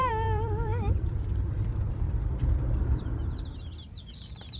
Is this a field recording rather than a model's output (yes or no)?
no